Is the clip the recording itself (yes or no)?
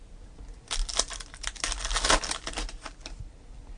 yes